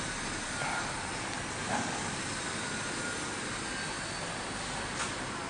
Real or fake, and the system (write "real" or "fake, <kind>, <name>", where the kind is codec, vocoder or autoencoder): real